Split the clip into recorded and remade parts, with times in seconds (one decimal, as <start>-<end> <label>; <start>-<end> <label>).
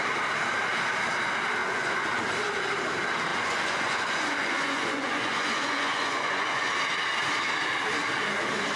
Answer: 0.0-1.6 recorded; 1.6-2.2 remade; 2.2-3.3 recorded; 3.3-6.7 remade; 6.7-8.8 recorded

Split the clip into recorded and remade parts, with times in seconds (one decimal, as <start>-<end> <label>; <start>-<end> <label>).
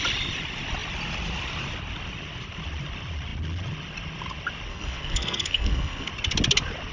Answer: 0.0-4.7 recorded; 4.7-6.1 remade; 6.1-6.9 recorded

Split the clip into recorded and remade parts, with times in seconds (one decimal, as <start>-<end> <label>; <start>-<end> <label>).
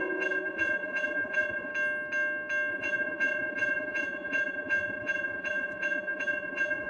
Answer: 0.0-1.7 remade; 1.7-2.7 recorded; 2.7-6.9 remade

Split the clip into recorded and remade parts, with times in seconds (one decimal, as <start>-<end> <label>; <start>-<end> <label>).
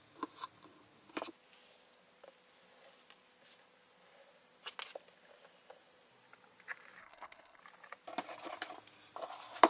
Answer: 0.0-7.0 recorded; 7.0-7.6 remade; 7.6-9.7 recorded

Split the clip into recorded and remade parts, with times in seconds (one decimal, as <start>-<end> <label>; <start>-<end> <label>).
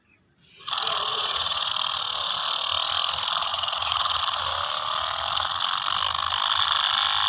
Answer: 0.0-1.1 recorded; 1.1-1.7 remade; 1.7-3.5 recorded; 3.5-4.2 remade; 4.2-7.3 recorded